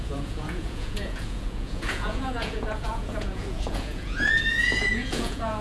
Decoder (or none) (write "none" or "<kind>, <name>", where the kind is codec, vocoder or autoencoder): vocoder, Vocos